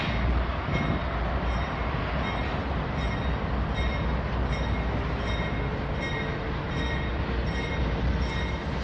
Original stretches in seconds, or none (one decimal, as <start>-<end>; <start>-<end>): 0.0-8.8